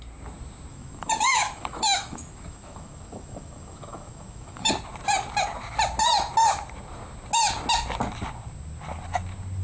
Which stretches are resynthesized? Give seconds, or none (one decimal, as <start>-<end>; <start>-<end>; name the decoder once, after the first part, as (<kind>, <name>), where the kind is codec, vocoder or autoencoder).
0.7-4.7 (autoencoder, DAC-VAE)